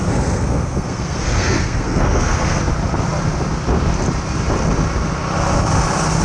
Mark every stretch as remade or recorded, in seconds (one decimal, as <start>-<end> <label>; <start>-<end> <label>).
0.0-2.6 remade; 2.6-6.2 recorded